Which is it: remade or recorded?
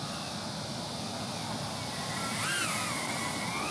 recorded